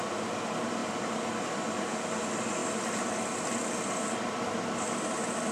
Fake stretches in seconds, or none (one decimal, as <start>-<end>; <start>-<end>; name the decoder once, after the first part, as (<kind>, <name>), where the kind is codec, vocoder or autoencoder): 0.8-1.8 (vocoder, BigVGAN v2); 2.6-4.9